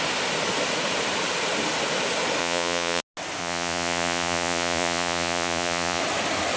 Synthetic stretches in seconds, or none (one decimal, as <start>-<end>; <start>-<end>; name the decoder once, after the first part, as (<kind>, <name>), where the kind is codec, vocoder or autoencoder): 2.4-3.0 (vocoder, Vocos); 3.4-6.0